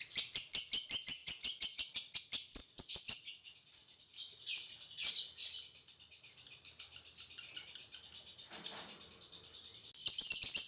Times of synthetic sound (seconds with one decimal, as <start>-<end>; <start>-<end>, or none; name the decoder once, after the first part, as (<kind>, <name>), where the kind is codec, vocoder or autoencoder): 1.2-2.2 (vocoder, Vocos); 2.6-5.1